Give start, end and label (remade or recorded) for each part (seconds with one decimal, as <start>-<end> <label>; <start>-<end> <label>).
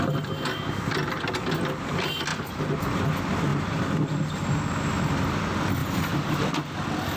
0.0-2.3 recorded; 2.3-3.0 remade; 3.0-5.8 recorded; 5.8-6.4 remade; 6.4-7.2 recorded